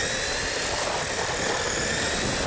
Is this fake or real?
real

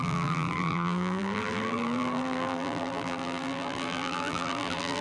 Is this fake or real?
fake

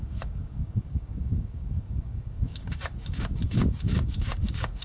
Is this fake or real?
fake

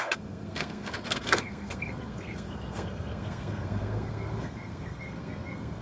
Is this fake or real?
fake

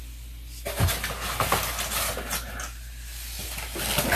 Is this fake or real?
real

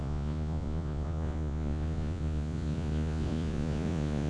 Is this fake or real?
fake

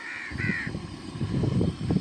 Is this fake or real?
fake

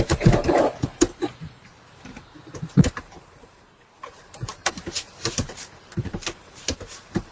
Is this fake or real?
fake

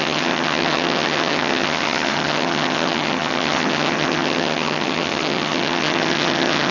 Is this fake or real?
fake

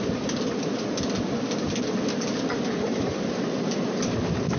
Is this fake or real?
real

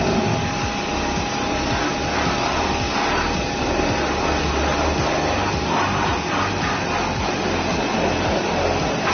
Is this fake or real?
real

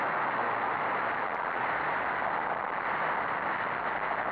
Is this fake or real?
real